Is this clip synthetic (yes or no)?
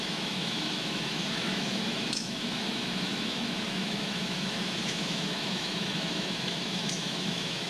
yes